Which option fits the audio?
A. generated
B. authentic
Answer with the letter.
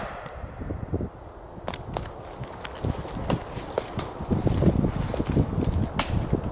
B